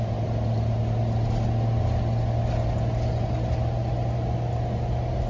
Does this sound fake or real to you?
real